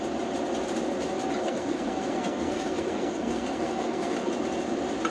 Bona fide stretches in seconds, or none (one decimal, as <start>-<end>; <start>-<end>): 0.0-1.4; 4.3-5.1